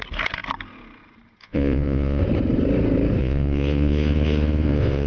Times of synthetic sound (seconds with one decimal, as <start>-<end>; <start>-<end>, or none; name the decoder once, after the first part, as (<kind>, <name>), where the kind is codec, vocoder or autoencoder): 1.4-2.2 (vocoder, Vocos); 3.2-5.1